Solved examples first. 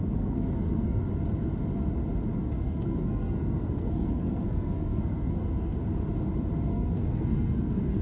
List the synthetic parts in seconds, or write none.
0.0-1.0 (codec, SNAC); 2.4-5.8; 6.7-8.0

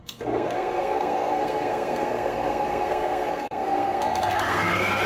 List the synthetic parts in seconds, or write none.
0.0-5.1 (codec, SNAC)

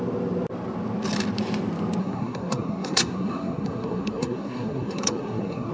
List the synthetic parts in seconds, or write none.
2.0-5.7 (codec, SNAC)

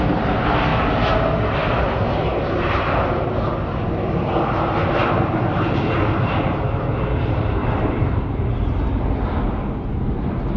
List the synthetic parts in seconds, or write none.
none

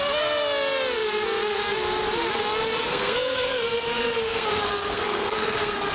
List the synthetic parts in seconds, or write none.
2.9-5.9 (codec, SNAC)

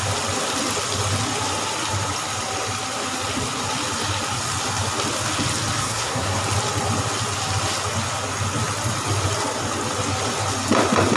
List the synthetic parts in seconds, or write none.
5.8-6.4 (codec, SNAC)

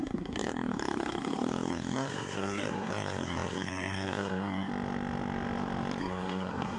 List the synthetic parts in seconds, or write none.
0.0-4.7 (codec, SNAC); 6.0-6.8